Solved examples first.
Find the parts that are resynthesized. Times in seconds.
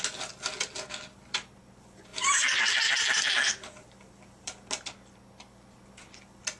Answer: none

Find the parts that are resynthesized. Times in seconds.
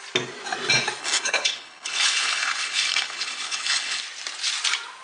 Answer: 1.0-4.0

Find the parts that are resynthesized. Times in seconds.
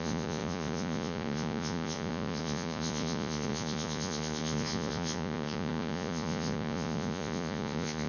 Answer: 0.0-8.1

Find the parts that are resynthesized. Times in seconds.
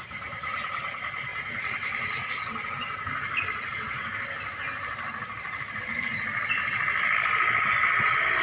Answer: none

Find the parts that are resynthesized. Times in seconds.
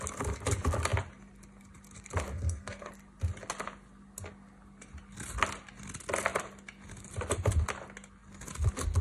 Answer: 2.3-2.9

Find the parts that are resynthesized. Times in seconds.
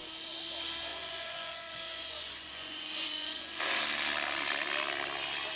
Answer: 0.9-3.6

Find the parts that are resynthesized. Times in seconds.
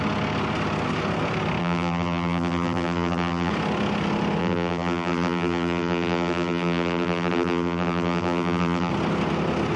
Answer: 1.6-3.5; 4.4-8.9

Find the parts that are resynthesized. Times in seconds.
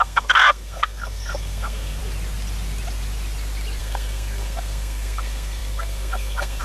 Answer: 0.0-2.0; 3.8-6.6